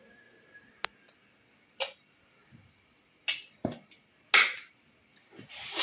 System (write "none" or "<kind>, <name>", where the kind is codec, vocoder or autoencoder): none